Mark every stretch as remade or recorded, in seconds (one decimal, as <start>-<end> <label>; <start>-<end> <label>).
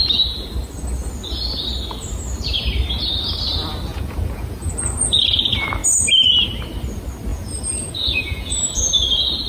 0.0-3.9 recorded; 3.9-4.7 remade; 4.7-7.3 recorded; 7.3-8.8 remade; 8.8-9.5 recorded